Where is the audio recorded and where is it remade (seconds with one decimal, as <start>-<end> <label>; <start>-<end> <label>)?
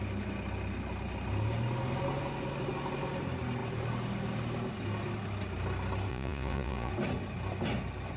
0.0-6.1 recorded; 6.1-6.9 remade; 6.9-8.2 recorded